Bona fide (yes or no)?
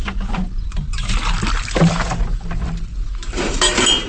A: yes